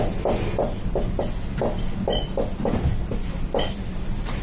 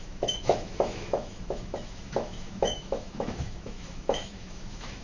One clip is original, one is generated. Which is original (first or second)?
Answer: first